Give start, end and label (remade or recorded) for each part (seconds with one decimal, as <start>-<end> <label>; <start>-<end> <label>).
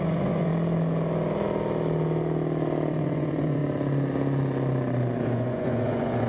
0.0-0.5 remade; 0.5-2.9 recorded; 2.9-3.6 remade; 3.6-5.2 recorded; 5.2-6.3 remade